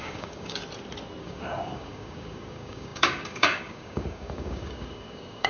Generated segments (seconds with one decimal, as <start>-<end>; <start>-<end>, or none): 0.0-0.6; 1.2-5.5